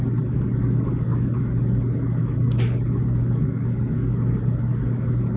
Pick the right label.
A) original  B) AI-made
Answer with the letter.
B